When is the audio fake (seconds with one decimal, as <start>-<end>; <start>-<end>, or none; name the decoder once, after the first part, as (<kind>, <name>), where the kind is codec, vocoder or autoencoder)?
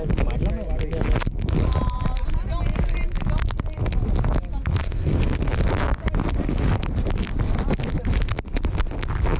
4.8-5.4 (codec, SNAC)